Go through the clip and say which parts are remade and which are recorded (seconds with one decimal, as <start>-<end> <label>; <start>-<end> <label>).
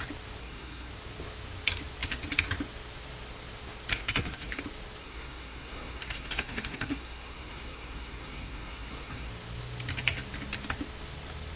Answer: 0.0-0.4 recorded; 0.4-0.9 remade; 0.9-3.9 recorded; 3.9-4.6 remade; 4.6-5.0 recorded; 5.0-9.3 remade; 9.3-11.6 recorded